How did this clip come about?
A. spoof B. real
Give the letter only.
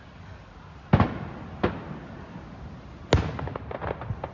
B